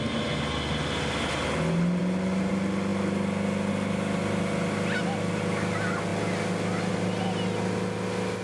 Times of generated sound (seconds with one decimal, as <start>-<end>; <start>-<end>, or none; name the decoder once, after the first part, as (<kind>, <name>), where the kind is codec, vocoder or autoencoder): none